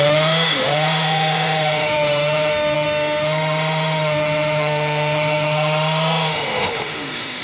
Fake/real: fake